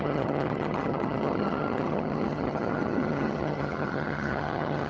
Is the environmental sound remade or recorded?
remade